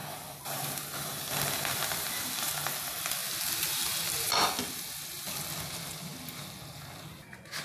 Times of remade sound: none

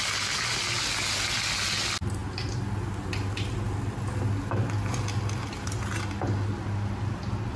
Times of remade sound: none